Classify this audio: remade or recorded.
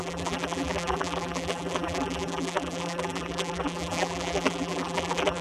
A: remade